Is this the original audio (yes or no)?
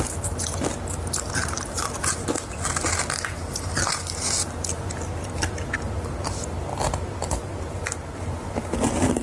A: yes